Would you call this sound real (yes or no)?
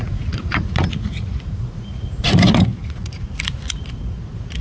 no